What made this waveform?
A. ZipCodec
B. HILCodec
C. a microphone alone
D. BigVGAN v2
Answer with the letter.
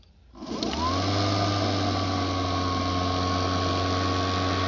C